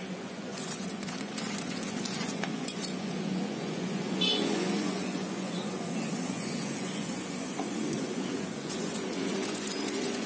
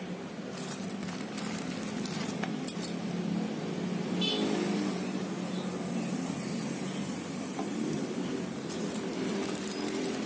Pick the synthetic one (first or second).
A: first